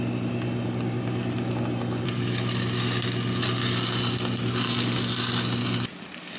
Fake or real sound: real